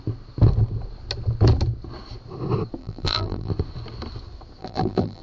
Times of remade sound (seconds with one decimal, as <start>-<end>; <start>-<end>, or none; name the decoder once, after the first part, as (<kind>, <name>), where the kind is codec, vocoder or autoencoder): 2.8-3.5 (vocoder, BigVGAN v2); 4.6-5.2